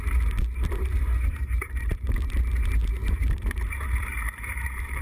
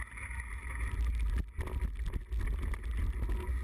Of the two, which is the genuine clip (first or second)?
second